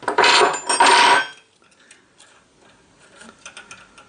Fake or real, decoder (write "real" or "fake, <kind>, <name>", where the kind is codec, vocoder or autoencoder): real